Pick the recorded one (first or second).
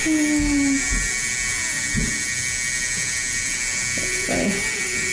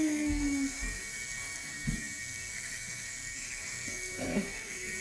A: first